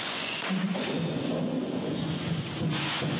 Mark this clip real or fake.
fake